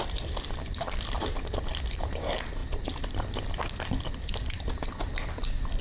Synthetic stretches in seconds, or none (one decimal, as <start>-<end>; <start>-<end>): none